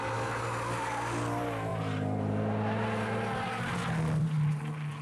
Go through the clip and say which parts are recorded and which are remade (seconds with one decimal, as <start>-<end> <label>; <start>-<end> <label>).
0.0-5.0 recorded